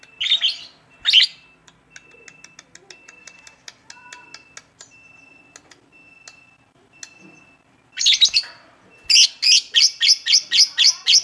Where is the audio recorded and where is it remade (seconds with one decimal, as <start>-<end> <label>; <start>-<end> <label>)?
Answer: 0.0-11.2 recorded